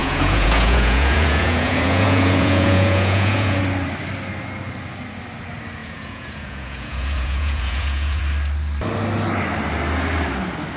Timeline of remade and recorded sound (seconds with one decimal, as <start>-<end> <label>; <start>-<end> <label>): 0.0-3.6 remade; 3.6-5.8 recorded; 5.8-8.2 remade; 8.2-10.8 recorded